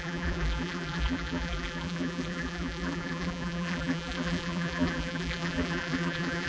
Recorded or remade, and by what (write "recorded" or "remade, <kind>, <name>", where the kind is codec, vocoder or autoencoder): remade, vocoder, BigVGAN v2